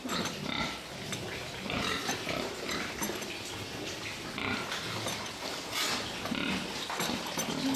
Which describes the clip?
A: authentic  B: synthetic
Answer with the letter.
A